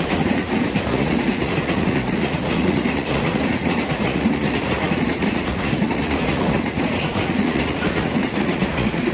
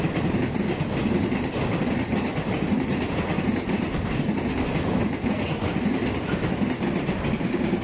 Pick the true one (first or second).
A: second